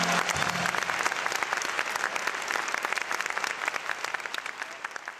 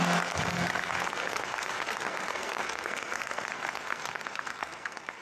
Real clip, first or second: first